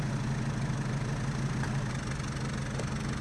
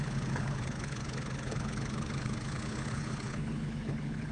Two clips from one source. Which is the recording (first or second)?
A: first